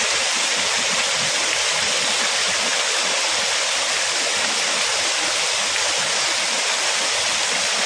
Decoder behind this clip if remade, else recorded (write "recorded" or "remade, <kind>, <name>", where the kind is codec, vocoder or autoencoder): recorded